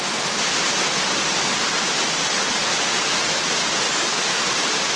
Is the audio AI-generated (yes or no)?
no